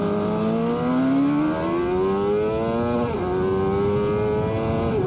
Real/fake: real